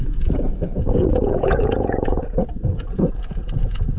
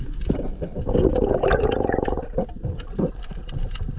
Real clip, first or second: second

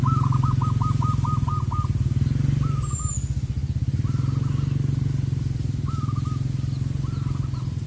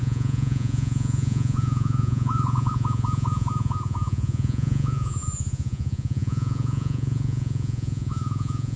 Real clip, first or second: first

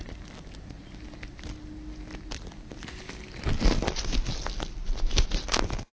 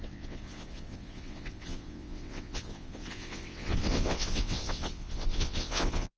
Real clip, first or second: first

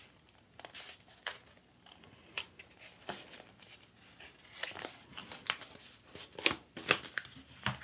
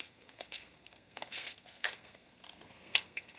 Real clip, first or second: first